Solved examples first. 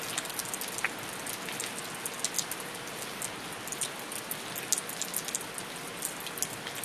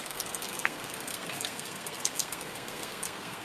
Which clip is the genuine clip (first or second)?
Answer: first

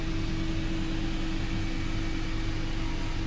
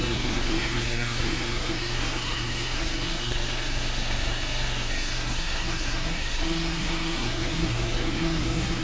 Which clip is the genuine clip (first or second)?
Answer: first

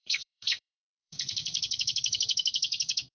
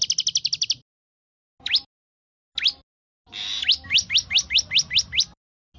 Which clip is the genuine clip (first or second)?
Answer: second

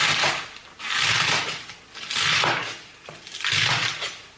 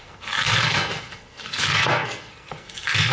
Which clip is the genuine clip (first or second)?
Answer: first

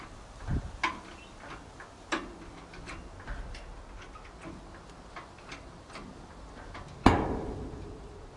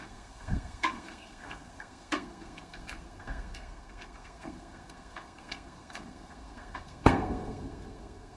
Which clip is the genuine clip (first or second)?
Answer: first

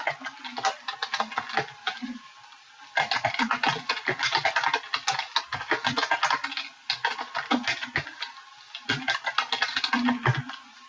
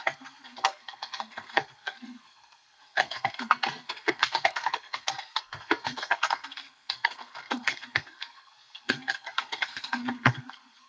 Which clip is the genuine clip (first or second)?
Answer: first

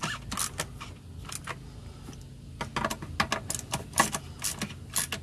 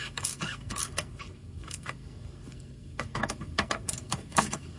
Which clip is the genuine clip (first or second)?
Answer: first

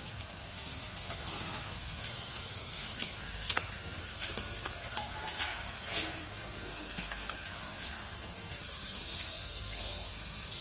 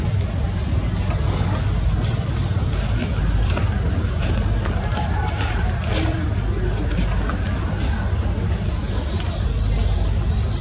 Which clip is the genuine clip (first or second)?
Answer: second